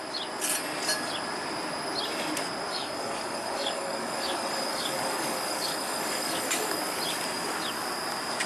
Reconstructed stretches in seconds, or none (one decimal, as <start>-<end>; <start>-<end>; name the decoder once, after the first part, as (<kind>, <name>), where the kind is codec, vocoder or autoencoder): 2.7-6.8 (codec, DAC)